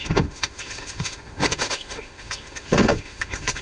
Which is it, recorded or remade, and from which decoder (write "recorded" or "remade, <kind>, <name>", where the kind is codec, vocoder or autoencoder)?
remade, autoencoder, DAC-VAE